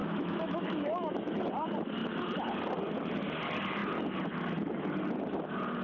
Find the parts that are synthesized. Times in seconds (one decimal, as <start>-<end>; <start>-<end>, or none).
0.0-1.4